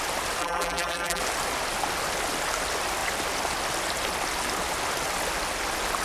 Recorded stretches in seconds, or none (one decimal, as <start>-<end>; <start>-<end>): 0.0-0.4; 1.2-6.0